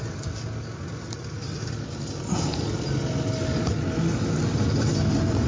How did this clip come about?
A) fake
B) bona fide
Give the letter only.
B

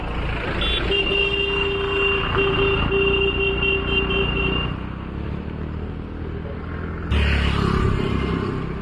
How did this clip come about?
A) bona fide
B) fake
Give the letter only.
A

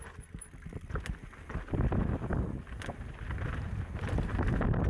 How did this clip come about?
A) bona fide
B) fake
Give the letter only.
A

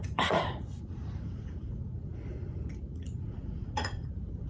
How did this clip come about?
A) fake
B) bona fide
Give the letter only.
A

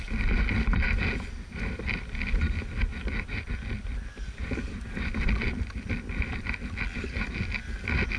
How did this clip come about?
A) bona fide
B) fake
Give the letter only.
A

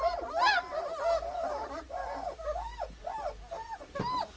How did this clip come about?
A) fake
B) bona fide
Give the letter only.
B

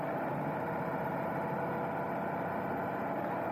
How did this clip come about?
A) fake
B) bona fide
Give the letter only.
B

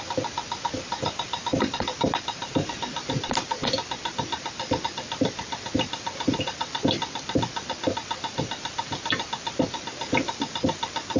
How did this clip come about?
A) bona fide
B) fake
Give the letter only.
A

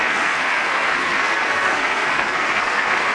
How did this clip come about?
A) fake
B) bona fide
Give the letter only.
A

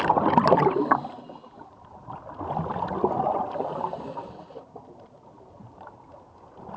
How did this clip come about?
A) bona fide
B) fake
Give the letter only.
A